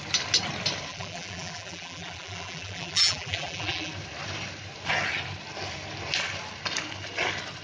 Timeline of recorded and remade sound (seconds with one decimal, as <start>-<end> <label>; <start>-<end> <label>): 0.0-0.9 recorded; 0.9-3.9 remade; 3.9-7.6 recorded